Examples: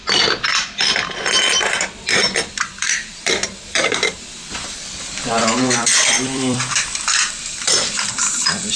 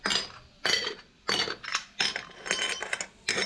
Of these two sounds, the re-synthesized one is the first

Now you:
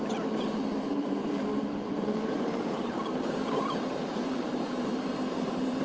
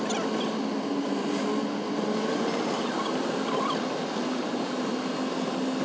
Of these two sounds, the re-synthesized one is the first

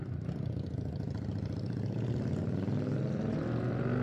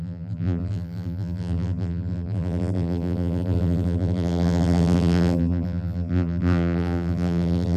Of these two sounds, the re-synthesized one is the second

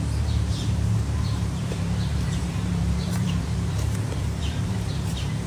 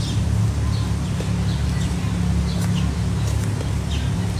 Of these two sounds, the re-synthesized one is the first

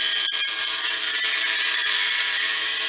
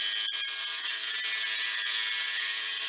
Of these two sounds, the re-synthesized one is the first